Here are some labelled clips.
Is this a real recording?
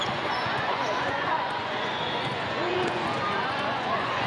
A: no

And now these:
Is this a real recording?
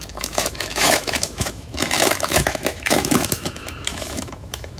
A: no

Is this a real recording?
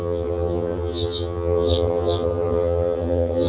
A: no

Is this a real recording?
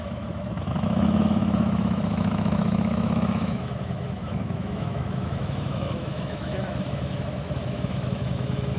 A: no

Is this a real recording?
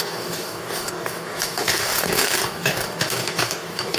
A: no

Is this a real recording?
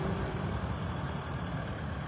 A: no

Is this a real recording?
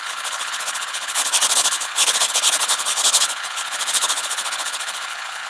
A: no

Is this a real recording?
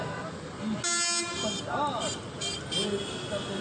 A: yes